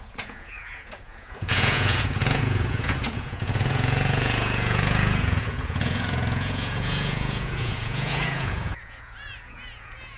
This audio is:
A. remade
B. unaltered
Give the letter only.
A